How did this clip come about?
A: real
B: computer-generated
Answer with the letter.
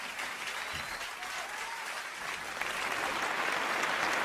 A